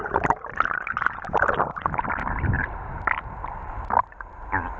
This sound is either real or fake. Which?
real